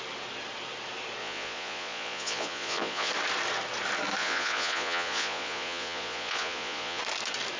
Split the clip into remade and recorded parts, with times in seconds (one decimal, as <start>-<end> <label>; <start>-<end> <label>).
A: 0.0-1.2 recorded; 1.2-3.1 remade; 3.1-4.2 recorded; 4.2-7.0 remade; 7.0-7.6 recorded